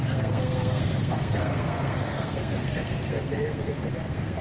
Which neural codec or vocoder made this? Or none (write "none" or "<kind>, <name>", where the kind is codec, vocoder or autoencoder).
codec, SNAC